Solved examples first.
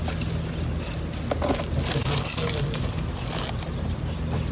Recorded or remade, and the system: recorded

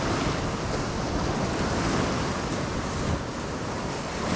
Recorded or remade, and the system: recorded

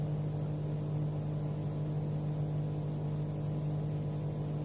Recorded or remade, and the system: recorded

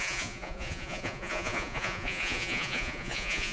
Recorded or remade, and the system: remade, vocoder, Vocos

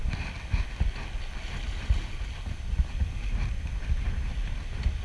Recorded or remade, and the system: recorded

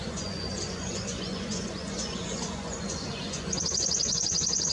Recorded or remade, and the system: remade, vocoder, Vocos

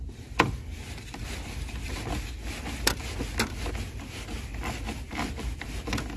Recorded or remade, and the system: recorded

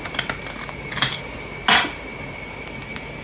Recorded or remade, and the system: recorded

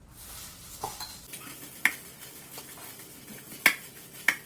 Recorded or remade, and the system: recorded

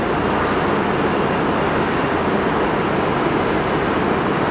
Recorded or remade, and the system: recorded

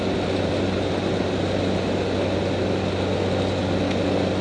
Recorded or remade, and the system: recorded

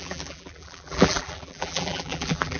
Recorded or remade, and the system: remade, vocoder, BigVGAN v2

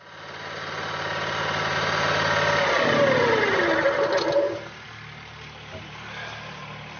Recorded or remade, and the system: recorded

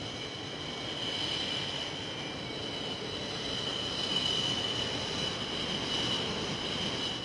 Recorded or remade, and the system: recorded